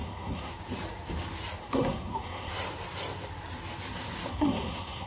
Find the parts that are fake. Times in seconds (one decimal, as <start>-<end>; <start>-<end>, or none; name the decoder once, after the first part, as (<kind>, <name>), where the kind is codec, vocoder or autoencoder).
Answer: 0.0-0.5 (codec, SNAC); 1.6-2.5; 4.3-5.1